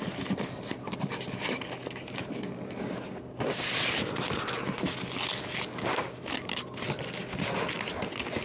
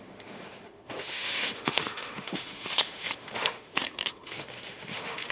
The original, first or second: first